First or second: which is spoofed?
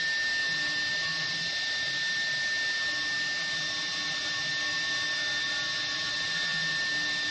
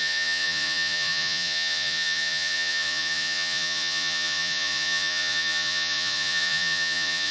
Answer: second